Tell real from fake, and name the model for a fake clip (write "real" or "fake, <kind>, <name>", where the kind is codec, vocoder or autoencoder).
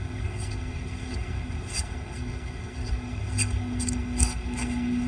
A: fake, codec, SNAC